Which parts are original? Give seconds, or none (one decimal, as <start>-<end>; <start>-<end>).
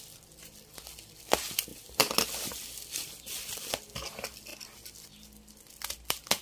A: 0.0-1.7; 3.1-6.4